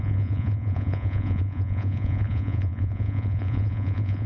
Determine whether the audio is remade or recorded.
remade